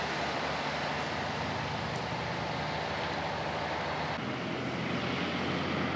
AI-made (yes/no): no